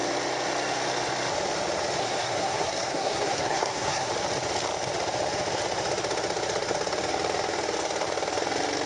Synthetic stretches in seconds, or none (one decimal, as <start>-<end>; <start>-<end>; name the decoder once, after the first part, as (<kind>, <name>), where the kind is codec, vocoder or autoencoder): 2.0-4.1 (codec, SNAC)